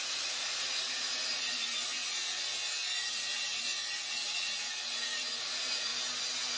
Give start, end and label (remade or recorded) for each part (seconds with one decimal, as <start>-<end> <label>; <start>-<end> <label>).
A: 0.0-5.9 remade; 5.9-6.6 recorded